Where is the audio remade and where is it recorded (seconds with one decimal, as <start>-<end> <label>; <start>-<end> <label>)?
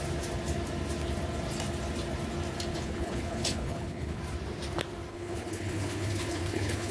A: 0.0-2.7 recorded; 2.7-4.2 remade; 4.2-5.1 recorded; 5.1-6.9 remade